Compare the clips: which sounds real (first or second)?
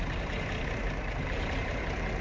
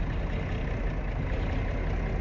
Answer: second